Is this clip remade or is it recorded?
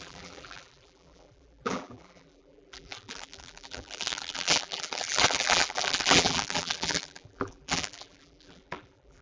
remade